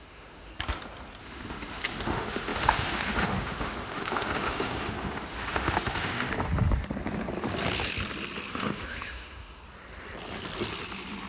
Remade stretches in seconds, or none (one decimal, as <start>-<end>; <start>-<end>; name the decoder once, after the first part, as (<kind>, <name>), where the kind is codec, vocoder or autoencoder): 0.0-0.5 (autoencoder, DAC-VAE); 1.2-6.3; 8.5-9.6